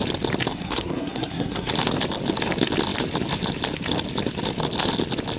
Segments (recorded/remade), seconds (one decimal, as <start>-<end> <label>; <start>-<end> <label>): 0.0-0.5 recorded; 0.5-1.7 remade; 1.7-5.4 recorded